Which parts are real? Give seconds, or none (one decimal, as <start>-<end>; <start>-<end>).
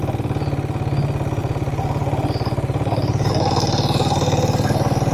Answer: 0.0-1.4; 3.3-5.1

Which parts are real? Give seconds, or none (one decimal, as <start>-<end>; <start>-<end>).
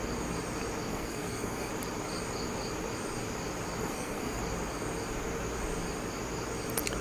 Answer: 0.0-0.9; 1.7-3.8; 4.4-7.0